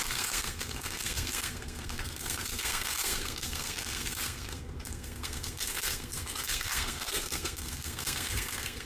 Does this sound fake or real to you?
fake